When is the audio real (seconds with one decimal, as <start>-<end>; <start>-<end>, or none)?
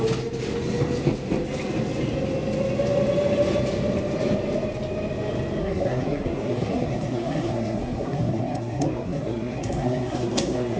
0.0-5.6